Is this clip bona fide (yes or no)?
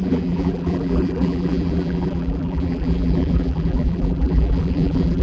no